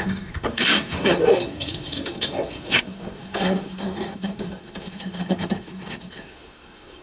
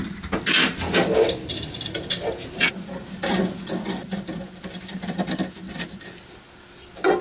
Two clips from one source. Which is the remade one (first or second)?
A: first